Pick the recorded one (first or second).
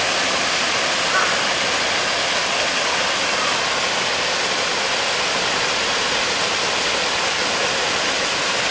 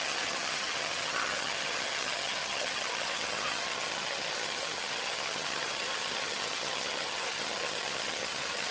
first